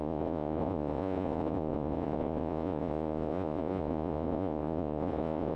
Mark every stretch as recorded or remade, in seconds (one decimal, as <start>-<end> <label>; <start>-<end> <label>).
0.0-5.6 remade

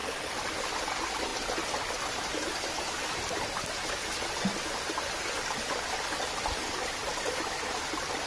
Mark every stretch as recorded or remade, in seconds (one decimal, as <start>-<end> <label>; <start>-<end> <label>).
0.0-8.3 recorded

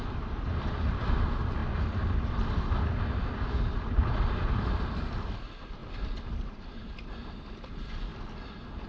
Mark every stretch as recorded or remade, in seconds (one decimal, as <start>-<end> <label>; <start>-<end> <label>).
0.0-8.9 recorded

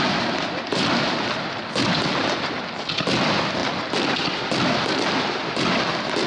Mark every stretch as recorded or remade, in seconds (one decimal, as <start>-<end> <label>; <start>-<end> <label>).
0.0-6.3 recorded